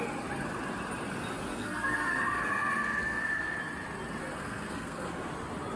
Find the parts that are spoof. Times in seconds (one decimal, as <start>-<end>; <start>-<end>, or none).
1.5-3.6; 4.2-5.3